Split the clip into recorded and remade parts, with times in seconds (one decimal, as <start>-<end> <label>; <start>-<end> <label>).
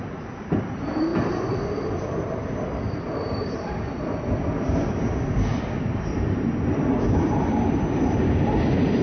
0.0-9.0 remade